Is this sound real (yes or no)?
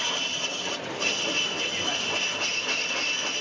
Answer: yes